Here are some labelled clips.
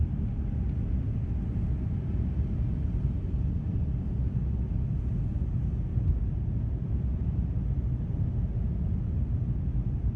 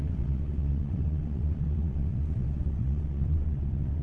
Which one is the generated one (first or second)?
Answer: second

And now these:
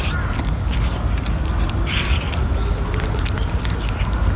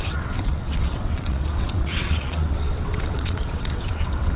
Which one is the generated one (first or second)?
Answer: second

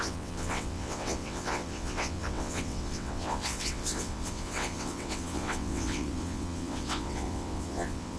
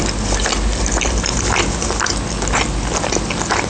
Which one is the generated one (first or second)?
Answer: first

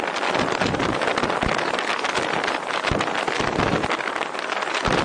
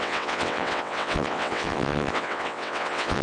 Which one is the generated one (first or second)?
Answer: second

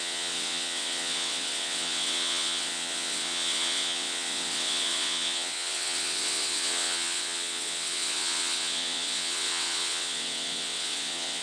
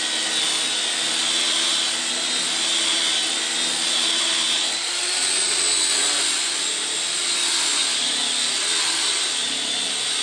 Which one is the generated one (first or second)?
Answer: first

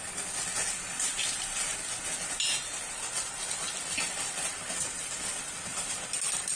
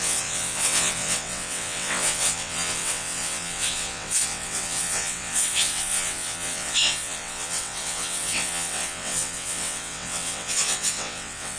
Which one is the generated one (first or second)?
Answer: second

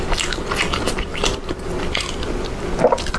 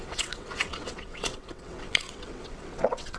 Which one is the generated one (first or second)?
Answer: second